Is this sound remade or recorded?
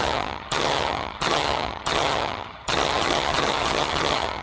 remade